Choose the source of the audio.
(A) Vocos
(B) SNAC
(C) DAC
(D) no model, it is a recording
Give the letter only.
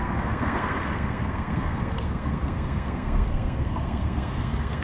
B